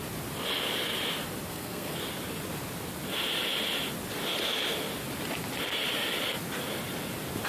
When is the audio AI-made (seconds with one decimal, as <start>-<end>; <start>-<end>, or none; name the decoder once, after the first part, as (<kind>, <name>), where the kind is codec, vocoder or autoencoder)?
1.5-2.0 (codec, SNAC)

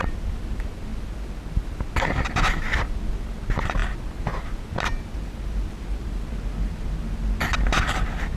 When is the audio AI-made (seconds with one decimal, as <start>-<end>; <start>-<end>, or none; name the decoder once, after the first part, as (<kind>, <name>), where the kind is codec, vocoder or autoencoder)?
none

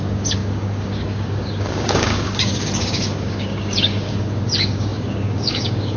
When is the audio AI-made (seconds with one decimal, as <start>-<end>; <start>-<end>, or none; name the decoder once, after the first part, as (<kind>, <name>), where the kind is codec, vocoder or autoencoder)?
0.0-6.0 (codec, DAC)

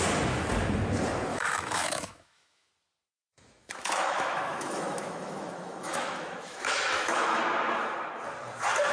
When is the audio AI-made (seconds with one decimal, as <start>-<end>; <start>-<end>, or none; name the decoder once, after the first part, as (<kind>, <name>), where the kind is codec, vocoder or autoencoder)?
1.3-2.7 (autoencoder, DAC-VAE); 3.3-7.4

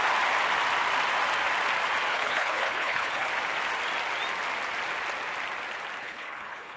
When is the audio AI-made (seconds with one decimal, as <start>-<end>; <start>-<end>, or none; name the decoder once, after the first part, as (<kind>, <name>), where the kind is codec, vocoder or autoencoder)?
2.1-3.3 (codec, HILCodec); 6.0-6.8

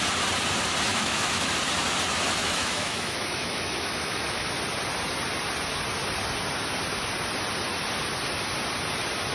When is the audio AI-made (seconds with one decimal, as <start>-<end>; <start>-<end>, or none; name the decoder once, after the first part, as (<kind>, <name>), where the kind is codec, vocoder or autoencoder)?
0.9-1.5 (autoencoder, DAC-VAE); 2.4-4.5